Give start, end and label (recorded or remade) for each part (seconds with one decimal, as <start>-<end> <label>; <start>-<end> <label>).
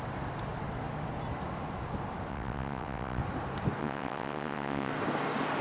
0.0-2.3 recorded; 2.3-3.2 remade; 3.2-3.8 recorded; 3.8-4.9 remade; 4.9-5.6 recorded